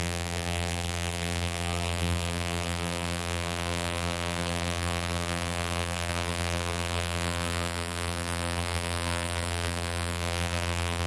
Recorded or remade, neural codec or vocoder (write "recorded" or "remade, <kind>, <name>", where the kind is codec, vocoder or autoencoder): remade, vocoder, BigVGAN v2